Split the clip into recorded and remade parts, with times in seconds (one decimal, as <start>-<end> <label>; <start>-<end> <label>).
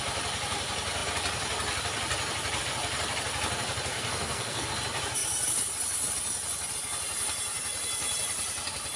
0.0-3.9 recorded; 3.9-4.7 remade; 4.7-9.0 recorded